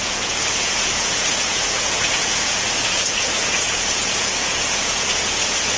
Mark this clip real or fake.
fake